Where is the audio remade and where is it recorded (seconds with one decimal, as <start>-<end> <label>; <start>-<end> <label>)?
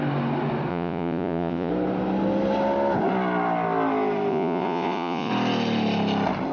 0.0-0.7 recorded; 0.7-1.7 remade; 1.7-4.3 recorded; 4.3-5.3 remade; 5.3-6.5 recorded